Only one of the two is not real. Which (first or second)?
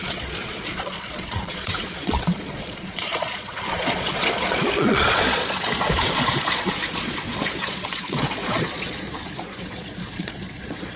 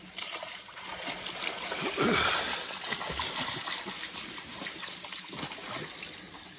first